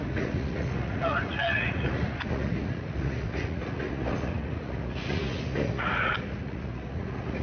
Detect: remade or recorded remade